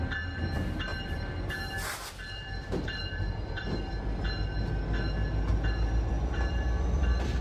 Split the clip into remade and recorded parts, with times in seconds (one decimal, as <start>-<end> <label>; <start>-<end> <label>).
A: 0.0-0.9 recorded; 0.9-3.9 remade; 3.9-5.5 recorded; 5.5-7.4 remade